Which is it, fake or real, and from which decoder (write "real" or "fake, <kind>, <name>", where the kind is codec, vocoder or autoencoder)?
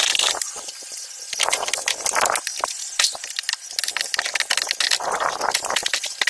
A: real